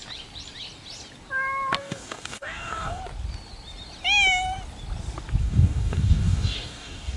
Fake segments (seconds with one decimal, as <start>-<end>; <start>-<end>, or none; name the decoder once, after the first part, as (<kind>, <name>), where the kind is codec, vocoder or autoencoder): 1.8-3.0 (codec, DAC); 5.4-7.2